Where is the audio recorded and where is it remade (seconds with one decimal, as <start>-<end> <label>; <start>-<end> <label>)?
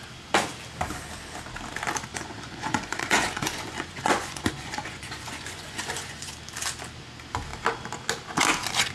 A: 0.0-2.1 recorded; 2.1-6.3 remade; 6.3-8.9 recorded